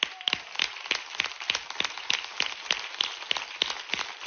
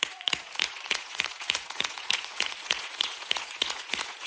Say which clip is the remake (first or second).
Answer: second